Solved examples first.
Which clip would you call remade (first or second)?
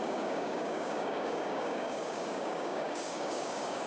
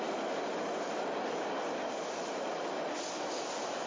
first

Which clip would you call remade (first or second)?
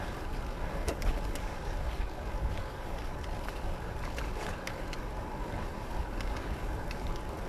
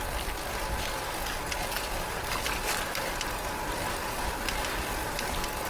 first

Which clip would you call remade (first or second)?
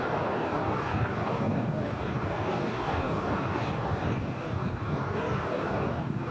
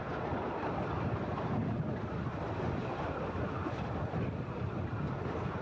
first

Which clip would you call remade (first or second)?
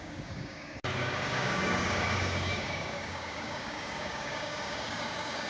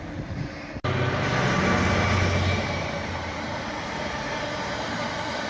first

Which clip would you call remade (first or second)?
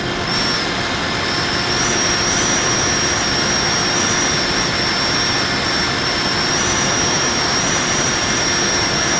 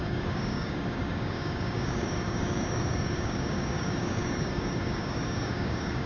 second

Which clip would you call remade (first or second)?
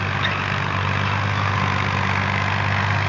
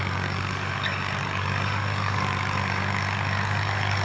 second